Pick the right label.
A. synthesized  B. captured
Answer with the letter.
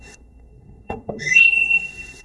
A